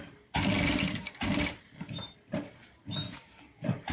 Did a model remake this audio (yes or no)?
yes